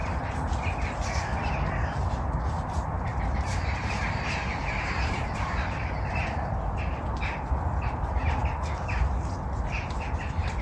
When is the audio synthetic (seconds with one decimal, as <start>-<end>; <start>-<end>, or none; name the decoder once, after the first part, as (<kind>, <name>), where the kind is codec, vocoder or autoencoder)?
0.0-0.5 (vocoder, BigVGAN v2); 3.1-6.6